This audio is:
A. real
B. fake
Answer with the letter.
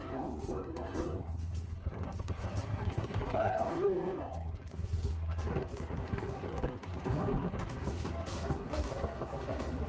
B